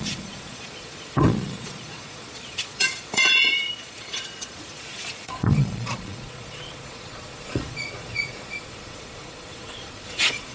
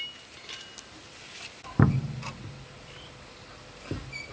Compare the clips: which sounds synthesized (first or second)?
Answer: first